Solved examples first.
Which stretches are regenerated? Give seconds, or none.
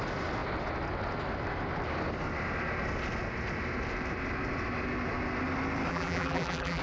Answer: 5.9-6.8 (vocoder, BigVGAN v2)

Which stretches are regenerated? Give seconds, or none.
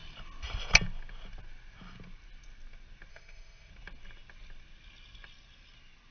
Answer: 3.1-3.7 (autoencoder, DAC-VAE)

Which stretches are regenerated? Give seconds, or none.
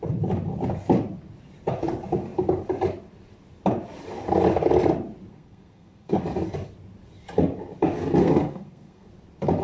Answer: 5.3-6.2 (codec, SNAC); 8.2-9.1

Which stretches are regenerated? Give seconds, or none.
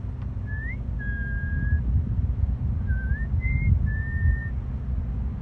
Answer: none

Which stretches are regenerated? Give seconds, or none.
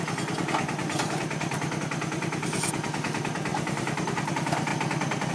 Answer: 0.8-1.8 (vocoder, BigVGAN v2); 3.5-4.3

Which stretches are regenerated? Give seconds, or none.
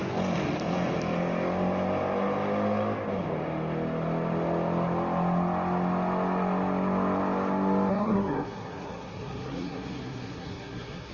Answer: 7.9-11.1 (codec, SNAC)